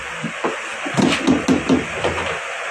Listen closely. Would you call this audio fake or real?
real